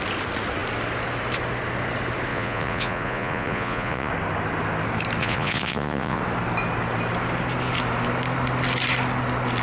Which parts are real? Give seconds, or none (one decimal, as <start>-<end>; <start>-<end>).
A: 0.0-2.3; 4.1-5.2; 6.2-9.6